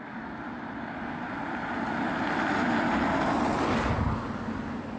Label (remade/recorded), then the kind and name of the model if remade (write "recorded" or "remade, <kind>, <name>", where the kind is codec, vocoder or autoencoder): recorded